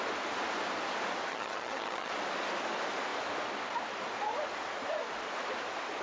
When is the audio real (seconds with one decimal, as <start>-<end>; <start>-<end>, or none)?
0.0-1.3; 2.1-6.0